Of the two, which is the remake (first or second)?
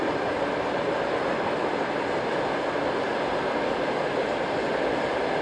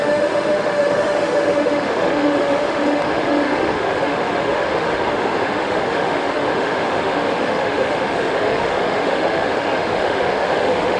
second